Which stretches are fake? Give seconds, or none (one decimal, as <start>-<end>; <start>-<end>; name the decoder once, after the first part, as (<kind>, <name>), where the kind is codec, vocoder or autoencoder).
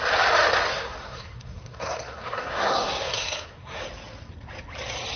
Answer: 0.7-3.8 (codec, SNAC)